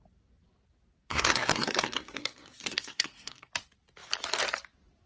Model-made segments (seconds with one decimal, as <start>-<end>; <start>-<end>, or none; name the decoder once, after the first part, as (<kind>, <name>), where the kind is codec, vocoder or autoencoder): 1.0-3.5 (codec, SNAC)

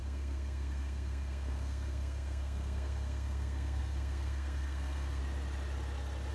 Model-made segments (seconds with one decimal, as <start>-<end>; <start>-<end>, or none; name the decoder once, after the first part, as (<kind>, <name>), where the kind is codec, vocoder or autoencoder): 0.0-5.2 (codec, SNAC)

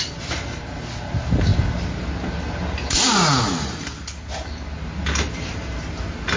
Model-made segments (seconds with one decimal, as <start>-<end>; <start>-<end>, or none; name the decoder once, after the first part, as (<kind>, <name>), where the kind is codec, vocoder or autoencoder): none

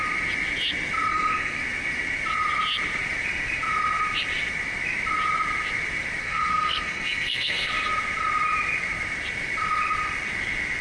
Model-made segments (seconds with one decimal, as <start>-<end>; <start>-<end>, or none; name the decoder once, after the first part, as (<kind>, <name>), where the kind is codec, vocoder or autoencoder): 1.1-1.6 (codec, SNAC); 6.2-7.7